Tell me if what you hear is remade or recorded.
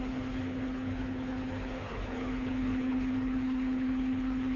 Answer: remade